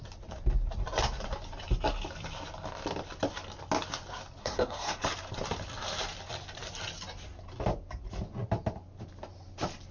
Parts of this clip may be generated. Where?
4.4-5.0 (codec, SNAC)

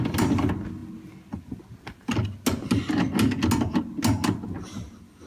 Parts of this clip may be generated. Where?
none

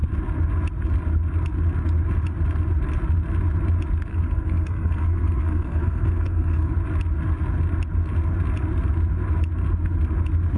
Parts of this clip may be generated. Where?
4.1-6.7 (codec, SNAC)

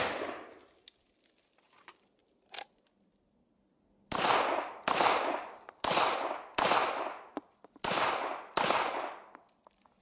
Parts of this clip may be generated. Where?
none

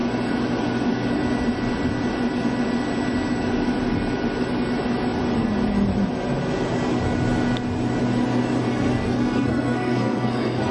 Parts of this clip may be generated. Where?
8.7-10.7 (codec, SNAC)